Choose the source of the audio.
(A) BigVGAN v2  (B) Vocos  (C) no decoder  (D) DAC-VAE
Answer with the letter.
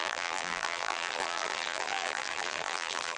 A